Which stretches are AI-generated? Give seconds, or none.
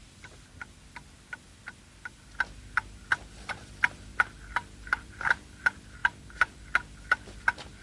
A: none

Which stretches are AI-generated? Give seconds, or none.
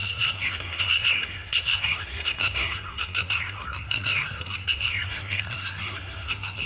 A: 0.0-6.7